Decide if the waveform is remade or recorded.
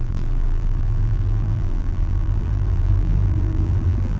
remade